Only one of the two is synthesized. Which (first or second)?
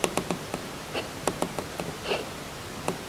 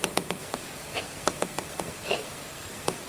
second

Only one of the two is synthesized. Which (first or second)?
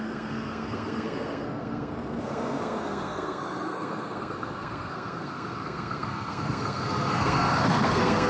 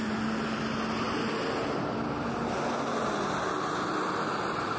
first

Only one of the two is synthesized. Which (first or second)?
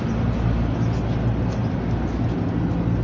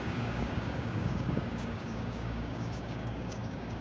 second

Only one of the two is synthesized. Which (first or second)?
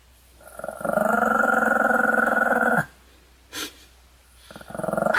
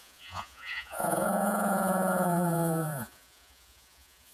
second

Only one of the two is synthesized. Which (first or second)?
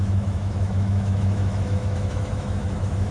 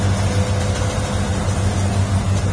first